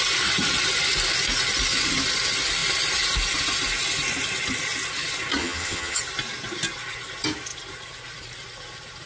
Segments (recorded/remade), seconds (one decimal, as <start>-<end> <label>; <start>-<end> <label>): 0.0-5.4 recorded; 5.4-6.0 remade; 6.0-9.1 recorded